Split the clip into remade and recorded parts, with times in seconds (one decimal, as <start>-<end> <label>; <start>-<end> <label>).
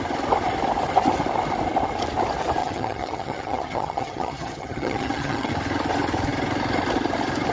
0.0-2.6 recorded; 2.6-5.5 remade; 5.5-7.5 recorded